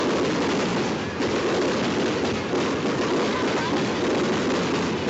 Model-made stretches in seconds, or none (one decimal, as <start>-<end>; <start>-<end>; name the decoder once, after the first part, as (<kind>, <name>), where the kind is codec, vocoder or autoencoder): none